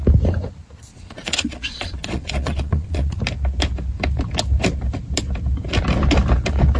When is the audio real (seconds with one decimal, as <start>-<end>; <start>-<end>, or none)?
0.0-0.9; 3.2-6.8